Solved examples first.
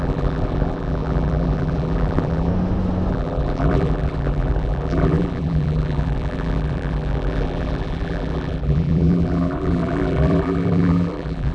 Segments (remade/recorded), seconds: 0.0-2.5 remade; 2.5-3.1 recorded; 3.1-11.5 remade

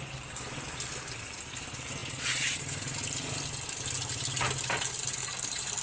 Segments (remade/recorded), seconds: 0.0-5.8 recorded

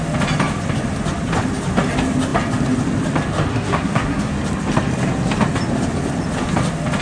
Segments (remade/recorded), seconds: 0.0-3.5 recorded; 3.5-4.3 remade; 4.3-7.0 recorded